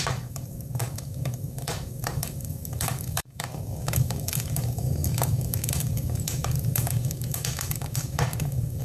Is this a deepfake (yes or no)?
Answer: yes